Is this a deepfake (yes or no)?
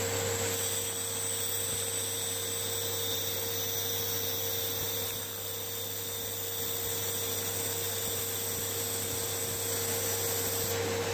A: no